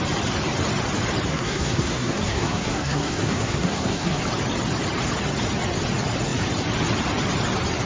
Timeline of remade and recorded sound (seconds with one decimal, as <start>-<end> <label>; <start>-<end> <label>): 0.0-1.3 recorded; 1.3-4.2 remade; 4.2-7.8 recorded